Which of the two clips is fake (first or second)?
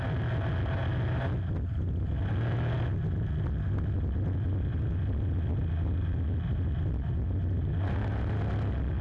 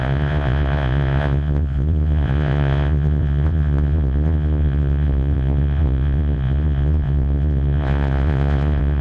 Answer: second